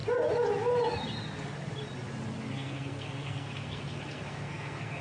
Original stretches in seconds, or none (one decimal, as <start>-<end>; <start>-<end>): 0.0-2.5